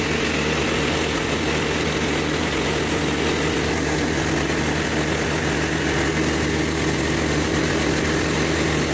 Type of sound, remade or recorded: recorded